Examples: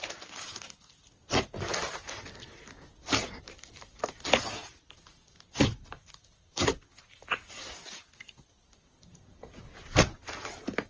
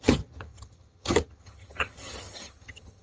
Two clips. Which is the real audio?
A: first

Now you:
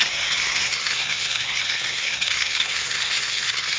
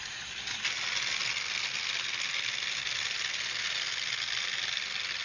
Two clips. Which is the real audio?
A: second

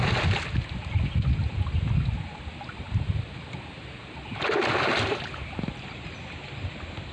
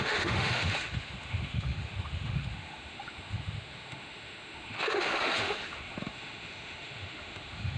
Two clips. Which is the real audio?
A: first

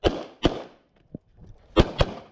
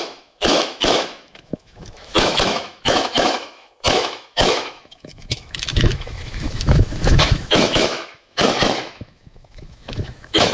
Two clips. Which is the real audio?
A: first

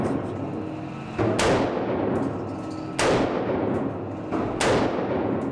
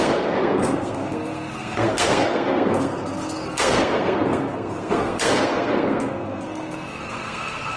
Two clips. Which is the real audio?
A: first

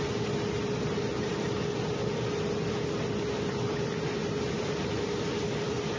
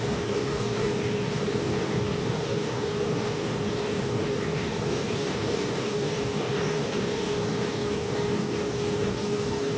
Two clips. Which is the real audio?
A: first